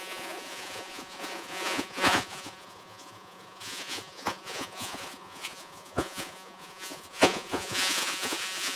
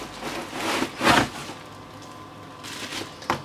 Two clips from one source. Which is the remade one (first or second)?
first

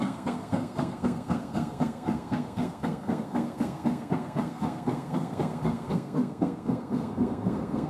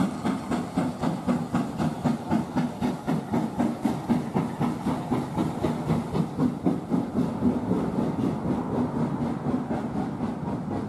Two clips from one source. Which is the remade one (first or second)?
first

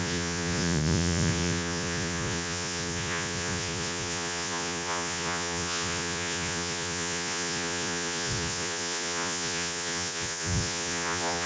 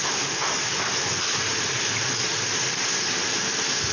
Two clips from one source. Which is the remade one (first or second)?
first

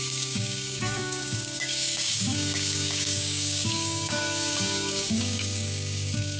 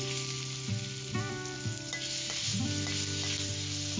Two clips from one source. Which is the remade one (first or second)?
first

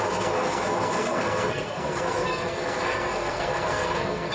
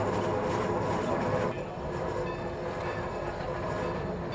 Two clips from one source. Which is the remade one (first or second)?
first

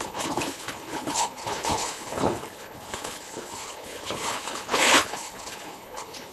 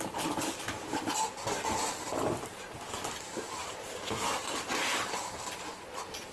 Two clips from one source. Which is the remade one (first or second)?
first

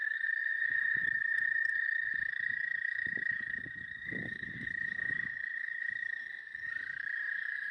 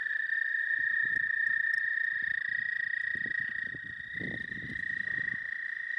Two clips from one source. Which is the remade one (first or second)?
first